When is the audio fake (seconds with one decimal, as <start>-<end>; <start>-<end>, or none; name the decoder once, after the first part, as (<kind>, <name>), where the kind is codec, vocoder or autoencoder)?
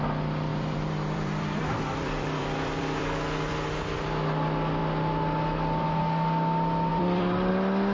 0.5-3.0 (vocoder, BigVGAN v2); 6.9-7.5